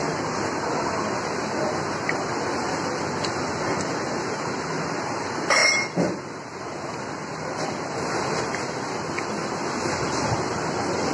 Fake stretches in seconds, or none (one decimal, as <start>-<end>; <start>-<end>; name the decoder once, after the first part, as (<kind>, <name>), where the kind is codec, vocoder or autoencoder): none